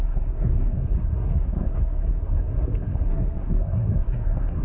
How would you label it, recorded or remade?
remade